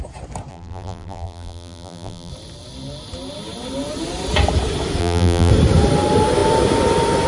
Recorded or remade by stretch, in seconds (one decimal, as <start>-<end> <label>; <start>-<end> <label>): 0.0-0.5 recorded; 0.5-2.3 remade; 2.3-5.0 recorded; 5.0-5.5 remade; 5.5-7.3 recorded